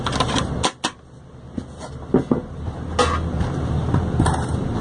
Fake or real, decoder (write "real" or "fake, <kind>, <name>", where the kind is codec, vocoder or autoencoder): real